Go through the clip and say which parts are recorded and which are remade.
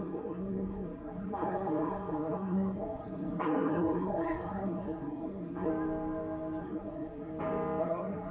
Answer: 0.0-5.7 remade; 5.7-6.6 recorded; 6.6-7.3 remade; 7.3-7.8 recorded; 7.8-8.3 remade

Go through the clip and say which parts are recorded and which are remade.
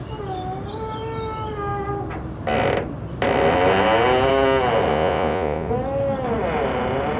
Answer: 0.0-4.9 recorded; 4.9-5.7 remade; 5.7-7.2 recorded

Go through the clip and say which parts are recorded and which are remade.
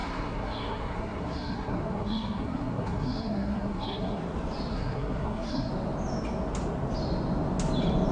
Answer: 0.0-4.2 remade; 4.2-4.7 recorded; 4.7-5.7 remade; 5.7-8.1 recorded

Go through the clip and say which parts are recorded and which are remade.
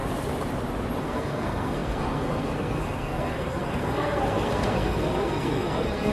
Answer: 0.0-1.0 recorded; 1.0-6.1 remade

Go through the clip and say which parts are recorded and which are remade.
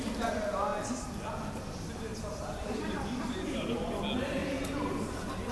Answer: 0.0-2.1 recorded; 2.1-4.0 remade; 4.0-4.4 recorded; 4.4-5.5 remade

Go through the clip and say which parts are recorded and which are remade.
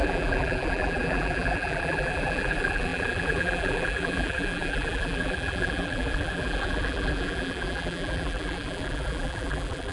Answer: 0.0-9.9 remade